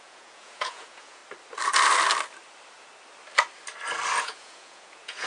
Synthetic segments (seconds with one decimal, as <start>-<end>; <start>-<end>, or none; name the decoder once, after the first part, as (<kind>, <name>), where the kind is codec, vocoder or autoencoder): 0.0-1.2 (vocoder, Vocos); 4.2-5.3